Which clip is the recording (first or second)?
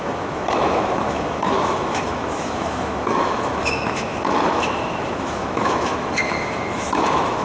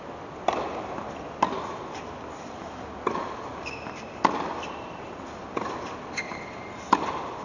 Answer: second